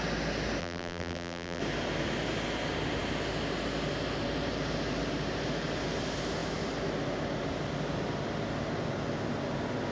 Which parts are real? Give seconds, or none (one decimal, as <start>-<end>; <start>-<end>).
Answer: 0.0-0.6; 1.6-9.9